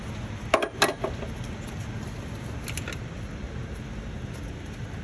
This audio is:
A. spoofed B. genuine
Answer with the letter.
B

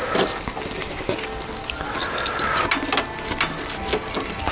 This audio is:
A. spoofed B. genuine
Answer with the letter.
B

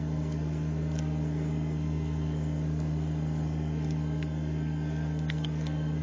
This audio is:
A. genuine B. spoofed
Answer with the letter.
B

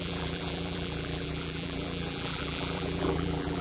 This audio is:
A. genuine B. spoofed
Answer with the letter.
B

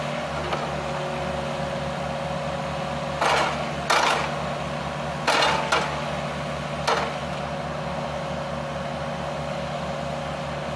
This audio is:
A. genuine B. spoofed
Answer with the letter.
A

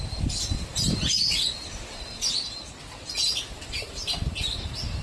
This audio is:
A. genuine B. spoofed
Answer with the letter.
A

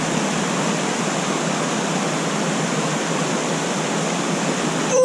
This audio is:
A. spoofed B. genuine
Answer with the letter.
B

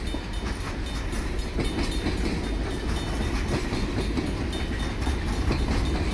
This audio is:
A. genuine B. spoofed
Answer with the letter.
A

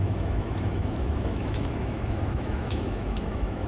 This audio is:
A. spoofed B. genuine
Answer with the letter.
A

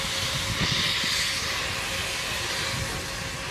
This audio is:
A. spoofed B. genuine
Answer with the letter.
B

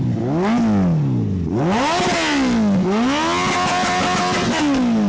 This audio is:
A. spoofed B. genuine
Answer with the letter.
B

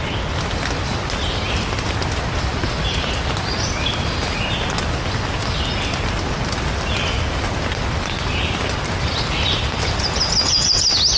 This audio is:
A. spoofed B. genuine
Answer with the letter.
B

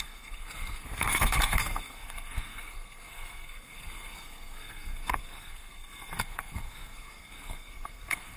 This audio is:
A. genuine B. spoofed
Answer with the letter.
B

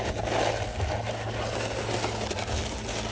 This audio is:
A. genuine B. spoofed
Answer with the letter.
A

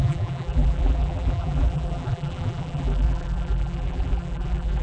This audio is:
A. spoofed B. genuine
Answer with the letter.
A